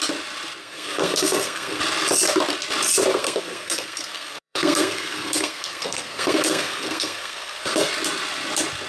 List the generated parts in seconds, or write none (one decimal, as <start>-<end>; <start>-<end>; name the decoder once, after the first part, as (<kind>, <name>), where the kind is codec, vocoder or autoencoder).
0.6-1.8 (codec, SNAC); 3.1-7.9